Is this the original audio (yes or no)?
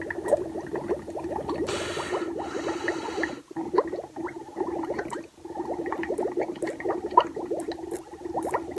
yes